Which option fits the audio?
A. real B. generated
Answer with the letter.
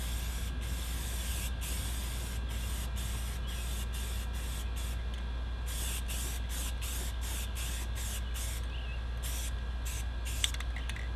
A